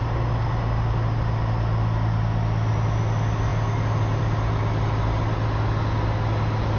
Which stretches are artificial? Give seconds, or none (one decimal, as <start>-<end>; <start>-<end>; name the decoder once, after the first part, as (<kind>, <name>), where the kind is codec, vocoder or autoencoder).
none